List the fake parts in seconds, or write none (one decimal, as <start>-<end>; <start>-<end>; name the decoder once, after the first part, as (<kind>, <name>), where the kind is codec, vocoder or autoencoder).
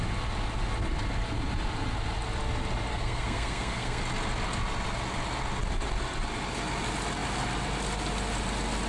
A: 2.9-4.0 (codec, SNAC)